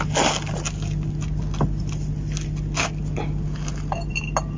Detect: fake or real real